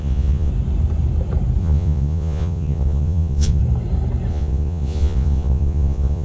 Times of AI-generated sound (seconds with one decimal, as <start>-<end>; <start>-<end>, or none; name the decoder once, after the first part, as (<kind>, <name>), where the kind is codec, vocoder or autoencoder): 0.0-0.5 (vocoder, Vocos); 1.6-3.6; 4.3-6.2